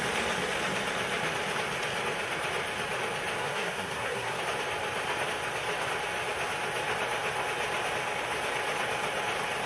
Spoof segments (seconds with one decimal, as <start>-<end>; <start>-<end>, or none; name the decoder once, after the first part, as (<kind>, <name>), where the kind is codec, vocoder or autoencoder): 3.4-4.4 (codec, SNAC)